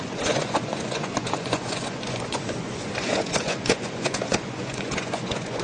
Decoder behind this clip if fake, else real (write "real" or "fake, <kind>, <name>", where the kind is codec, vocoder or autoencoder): fake, vocoder, Vocos